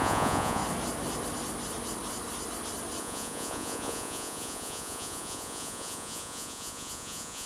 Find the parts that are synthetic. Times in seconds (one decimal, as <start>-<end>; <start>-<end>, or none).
0.0-0.6; 3.0-7.5